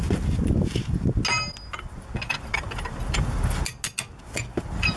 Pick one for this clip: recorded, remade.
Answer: recorded